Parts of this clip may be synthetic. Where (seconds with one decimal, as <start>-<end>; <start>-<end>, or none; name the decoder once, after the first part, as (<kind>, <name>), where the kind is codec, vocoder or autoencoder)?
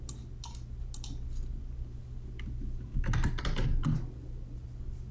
none